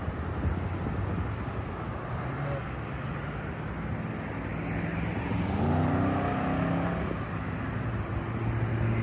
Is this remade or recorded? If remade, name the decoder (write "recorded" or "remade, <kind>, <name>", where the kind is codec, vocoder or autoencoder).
recorded